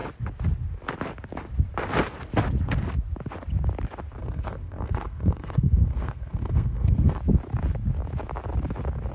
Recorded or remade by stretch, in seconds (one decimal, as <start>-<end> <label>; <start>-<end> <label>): 0.0-4.2 recorded; 4.2-7.2 remade; 7.2-9.1 recorded